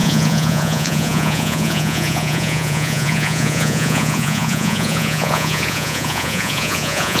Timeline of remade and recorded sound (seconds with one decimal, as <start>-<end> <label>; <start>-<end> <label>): 0.0-7.2 remade